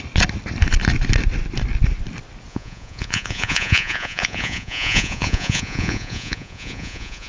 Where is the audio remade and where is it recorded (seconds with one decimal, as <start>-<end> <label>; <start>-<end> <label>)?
0.0-2.5 recorded; 2.5-7.3 remade